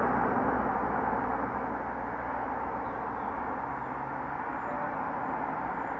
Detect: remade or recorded recorded